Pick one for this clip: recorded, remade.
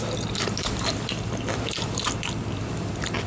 recorded